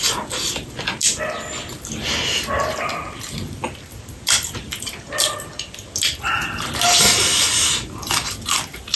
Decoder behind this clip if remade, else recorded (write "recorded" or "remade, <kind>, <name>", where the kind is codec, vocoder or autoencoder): recorded